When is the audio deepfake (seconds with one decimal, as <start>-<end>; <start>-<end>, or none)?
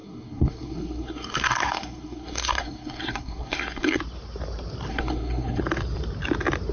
0.0-4.0; 4.9-5.6